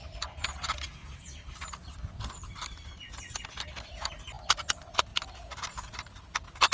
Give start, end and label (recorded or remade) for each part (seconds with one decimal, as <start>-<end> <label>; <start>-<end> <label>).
0.0-6.7 recorded